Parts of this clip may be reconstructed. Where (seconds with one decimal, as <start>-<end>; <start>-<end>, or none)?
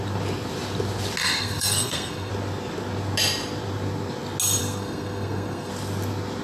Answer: 1.2-2.3; 4.6-5.7